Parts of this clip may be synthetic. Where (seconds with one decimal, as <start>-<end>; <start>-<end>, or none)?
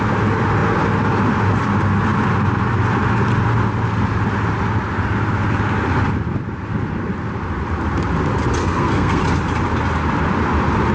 8.6-9.2